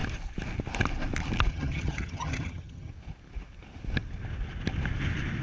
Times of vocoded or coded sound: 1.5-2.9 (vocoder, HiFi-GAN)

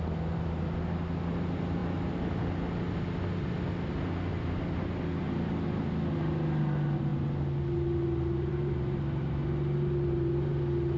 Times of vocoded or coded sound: none

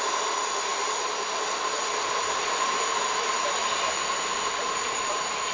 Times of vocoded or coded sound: none

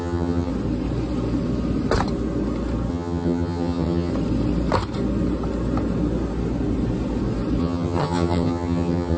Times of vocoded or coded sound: 0.0-0.5 (vocoder, HiFi-GAN); 2.9-4.1; 7.6-9.2

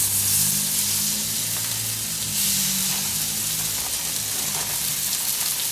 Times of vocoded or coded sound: none

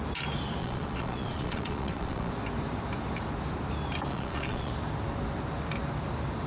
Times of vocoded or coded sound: 0.6-2.3 (vocoder, Vocos); 4.1-4.7

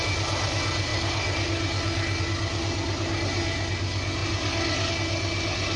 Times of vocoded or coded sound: none